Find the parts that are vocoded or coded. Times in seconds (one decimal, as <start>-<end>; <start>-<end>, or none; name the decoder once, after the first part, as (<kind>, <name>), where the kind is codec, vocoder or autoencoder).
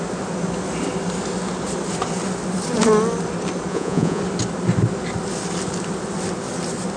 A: 3.7-4.2 (vocoder, Vocos)